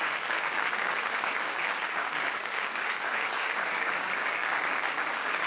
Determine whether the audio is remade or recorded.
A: remade